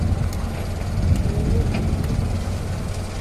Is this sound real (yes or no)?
yes